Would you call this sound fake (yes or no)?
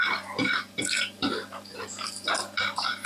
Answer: yes